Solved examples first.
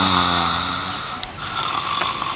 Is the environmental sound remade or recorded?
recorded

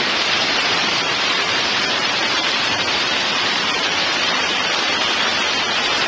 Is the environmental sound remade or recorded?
remade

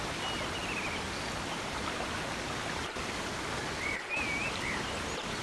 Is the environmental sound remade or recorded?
recorded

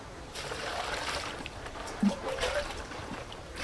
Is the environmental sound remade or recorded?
remade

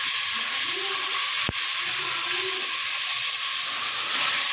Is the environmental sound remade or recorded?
recorded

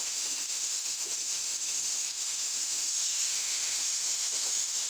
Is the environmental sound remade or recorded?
remade